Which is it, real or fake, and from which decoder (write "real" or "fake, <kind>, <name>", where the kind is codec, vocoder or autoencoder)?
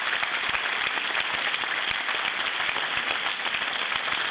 real